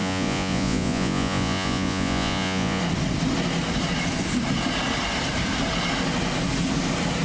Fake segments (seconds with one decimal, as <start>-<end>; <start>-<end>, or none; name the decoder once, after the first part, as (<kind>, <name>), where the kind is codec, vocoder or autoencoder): 0.0-2.8 (vocoder, Vocos)